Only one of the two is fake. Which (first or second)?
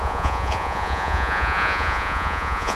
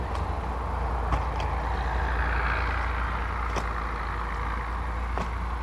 first